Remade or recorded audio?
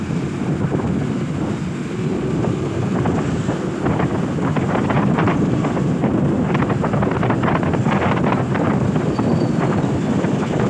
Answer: remade